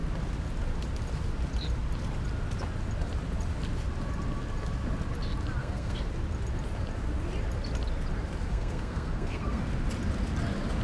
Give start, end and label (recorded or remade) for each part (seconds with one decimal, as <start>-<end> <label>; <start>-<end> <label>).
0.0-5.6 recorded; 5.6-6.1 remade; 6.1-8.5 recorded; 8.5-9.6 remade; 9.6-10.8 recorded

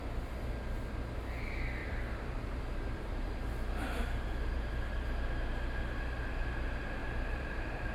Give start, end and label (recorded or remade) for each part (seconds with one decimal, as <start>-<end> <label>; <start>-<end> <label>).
0.0-1.8 recorded; 1.8-5.3 remade; 5.3-7.0 recorded; 7.0-7.9 remade

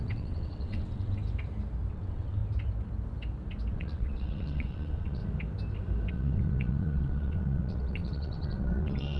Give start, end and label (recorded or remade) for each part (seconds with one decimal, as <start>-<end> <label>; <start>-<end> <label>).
0.0-1.2 remade; 1.2-1.9 recorded; 1.9-2.4 remade; 2.4-3.7 recorded; 3.7-5.2 remade; 5.2-6.1 recorded; 6.1-9.2 remade

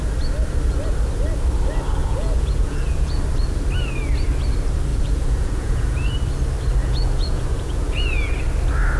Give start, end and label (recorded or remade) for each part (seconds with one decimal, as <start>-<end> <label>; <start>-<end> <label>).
0.0-2.0 recorded; 2.0-3.2 remade; 3.2-4.9 recorded; 4.9-6.1 remade; 6.1-6.8 recorded; 6.8-8.3 remade; 8.3-9.0 recorded